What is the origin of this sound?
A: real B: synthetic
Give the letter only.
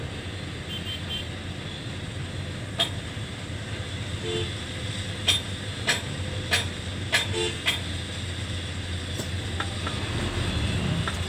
A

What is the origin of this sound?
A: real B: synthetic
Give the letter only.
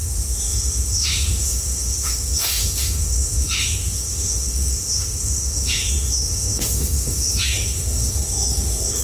B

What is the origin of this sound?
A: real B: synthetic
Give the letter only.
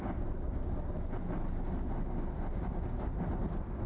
A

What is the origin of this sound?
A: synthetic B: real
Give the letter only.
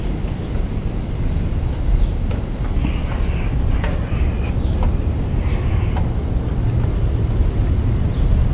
B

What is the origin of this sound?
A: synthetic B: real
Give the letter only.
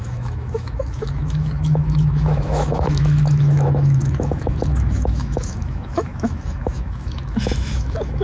A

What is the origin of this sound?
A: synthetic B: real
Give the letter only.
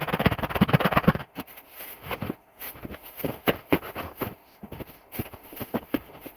A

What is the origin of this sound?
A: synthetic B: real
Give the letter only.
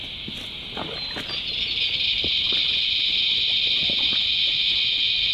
B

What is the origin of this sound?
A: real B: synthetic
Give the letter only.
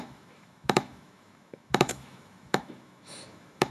B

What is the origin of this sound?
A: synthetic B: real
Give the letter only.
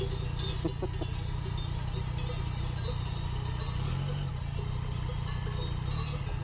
B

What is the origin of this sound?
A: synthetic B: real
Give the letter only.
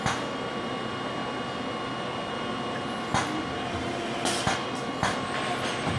B